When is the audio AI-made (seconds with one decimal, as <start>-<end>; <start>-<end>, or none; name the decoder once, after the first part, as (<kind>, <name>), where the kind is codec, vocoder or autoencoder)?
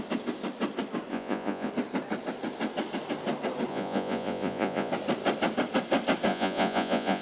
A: 1.1-1.7 (vocoder, Vocos); 3.7-4.9; 6.3-7.2